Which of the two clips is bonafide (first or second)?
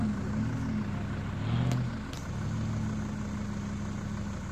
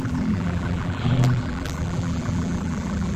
first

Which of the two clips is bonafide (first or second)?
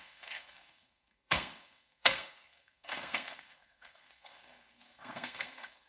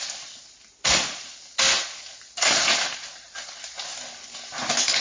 second